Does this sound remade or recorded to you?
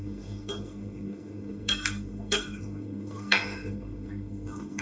remade